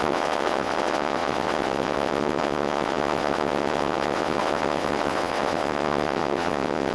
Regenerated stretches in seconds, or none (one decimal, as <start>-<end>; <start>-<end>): 0.0-6.9